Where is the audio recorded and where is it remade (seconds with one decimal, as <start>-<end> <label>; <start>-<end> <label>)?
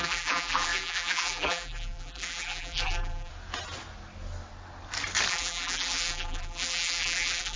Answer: 0.0-3.3 remade; 3.3-5.3 recorded; 5.3-7.6 remade